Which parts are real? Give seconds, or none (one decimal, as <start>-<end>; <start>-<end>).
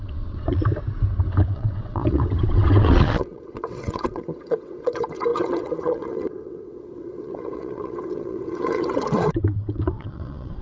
0.6-1.4